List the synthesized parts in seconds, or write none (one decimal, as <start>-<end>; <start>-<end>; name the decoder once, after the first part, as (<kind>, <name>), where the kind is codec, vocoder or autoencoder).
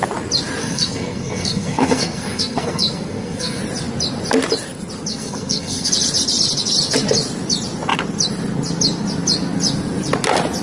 0.6-3.6 (codec, SNAC); 5.1-5.9